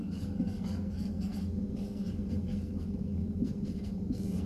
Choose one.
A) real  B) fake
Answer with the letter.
B